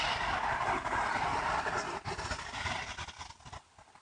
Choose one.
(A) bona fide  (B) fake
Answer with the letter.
A